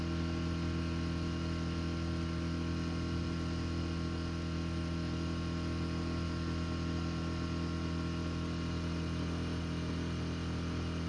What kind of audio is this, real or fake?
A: real